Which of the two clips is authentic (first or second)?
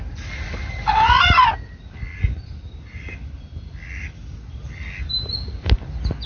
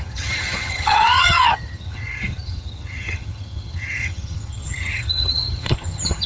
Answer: first